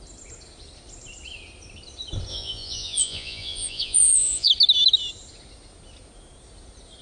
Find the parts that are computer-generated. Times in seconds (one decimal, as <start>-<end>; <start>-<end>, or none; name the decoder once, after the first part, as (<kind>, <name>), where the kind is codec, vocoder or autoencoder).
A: 2.3-4.5 (vocoder, Vocos)